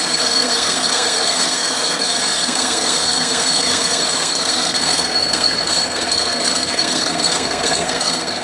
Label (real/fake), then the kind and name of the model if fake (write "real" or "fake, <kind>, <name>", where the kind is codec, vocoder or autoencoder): fake, codec, SNAC